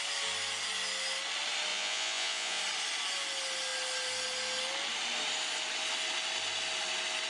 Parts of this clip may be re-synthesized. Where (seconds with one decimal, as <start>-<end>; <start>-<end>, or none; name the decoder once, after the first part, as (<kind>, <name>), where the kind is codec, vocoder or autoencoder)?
1.7-2.6 (vocoder, Vocos)